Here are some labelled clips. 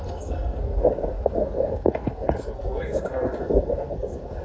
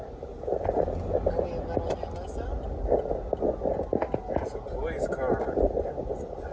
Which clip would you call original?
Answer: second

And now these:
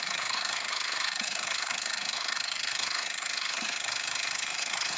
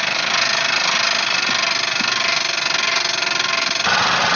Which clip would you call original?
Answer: second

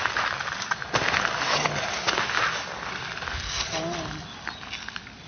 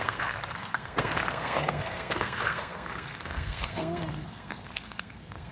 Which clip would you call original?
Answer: first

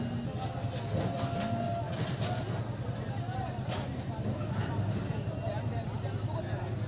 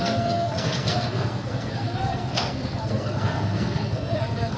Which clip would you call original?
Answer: first